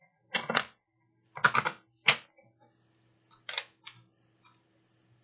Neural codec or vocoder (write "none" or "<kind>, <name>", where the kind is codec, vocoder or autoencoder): none